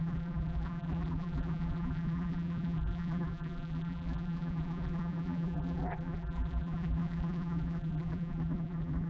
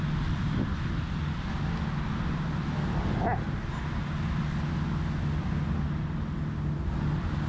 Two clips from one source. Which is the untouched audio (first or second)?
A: second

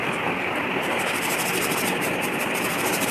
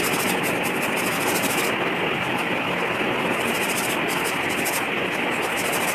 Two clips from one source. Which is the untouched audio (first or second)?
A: second